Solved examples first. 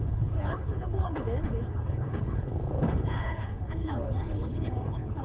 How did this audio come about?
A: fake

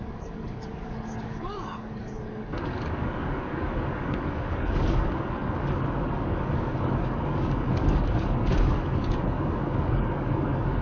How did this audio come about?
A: fake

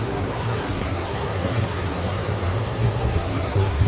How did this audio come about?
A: fake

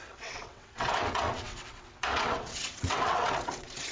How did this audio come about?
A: fake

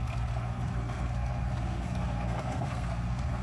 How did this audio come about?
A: fake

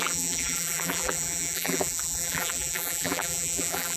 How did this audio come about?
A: fake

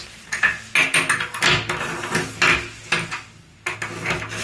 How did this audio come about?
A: real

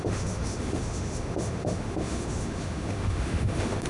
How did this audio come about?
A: fake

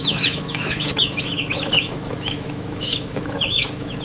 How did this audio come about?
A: fake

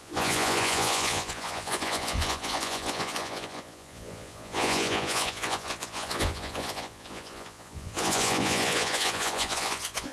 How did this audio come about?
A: fake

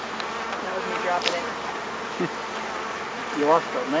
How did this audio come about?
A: real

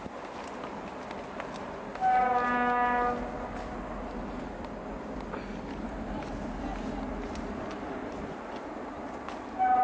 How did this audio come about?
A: real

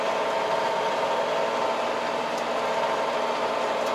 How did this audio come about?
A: real